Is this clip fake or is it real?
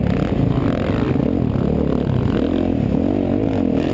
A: real